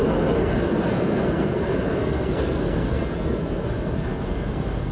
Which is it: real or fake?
fake